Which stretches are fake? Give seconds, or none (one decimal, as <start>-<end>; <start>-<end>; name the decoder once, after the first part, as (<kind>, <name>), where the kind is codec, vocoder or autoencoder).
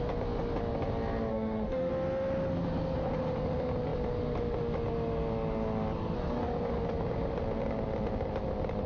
1.3-1.9 (autoencoder, DAC-VAE)